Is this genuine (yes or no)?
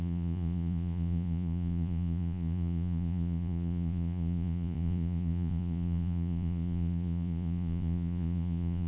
no